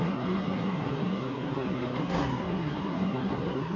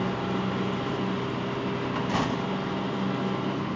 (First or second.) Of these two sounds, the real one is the second